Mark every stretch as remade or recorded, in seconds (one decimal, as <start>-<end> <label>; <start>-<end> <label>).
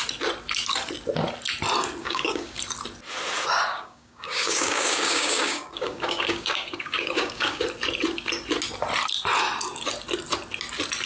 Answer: 0.0-2.0 recorded; 2.0-2.6 remade; 2.6-3.7 recorded; 3.7-7.6 remade; 7.6-11.1 recorded